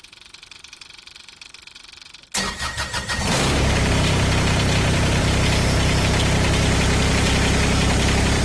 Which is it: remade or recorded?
remade